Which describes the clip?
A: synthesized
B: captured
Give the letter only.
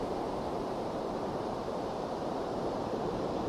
A